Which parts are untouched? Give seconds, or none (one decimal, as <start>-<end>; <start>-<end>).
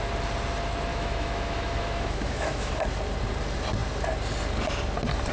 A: 0.0-0.9; 2.7-5.3